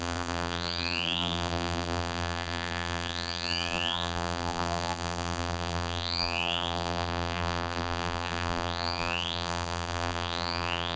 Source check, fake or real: fake